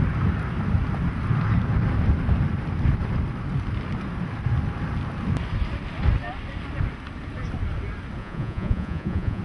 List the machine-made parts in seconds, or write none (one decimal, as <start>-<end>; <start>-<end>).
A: 8.2-9.4